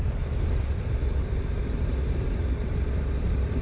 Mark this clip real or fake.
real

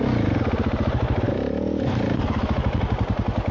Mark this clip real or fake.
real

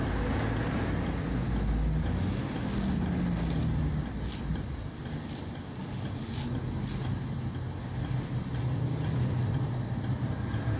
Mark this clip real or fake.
real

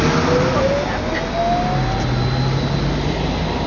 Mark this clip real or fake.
real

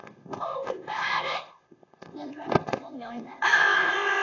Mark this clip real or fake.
fake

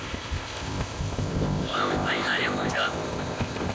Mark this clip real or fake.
fake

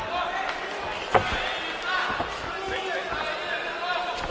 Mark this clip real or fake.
real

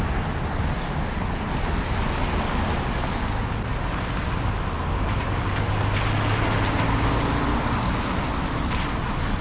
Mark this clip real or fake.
real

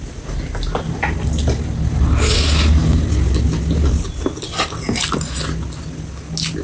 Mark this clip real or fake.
real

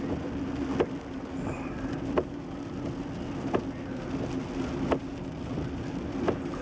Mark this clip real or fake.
real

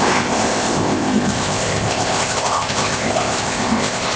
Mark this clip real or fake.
fake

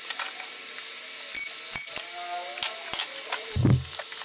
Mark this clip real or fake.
real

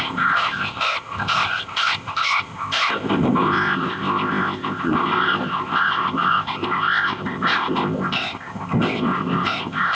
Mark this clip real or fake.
fake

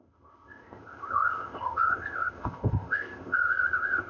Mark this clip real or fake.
fake